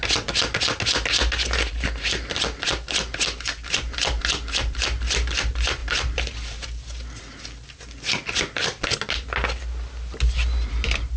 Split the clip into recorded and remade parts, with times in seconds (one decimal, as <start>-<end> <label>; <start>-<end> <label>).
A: 0.0-11.2 recorded